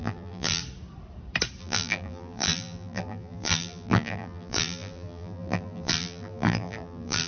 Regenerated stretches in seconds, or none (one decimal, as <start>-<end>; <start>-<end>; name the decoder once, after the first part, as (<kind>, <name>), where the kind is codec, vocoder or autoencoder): 0.0-0.6 (vocoder, BigVGAN v2); 1.6-7.3